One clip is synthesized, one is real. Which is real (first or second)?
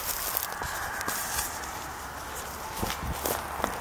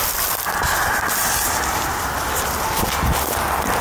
first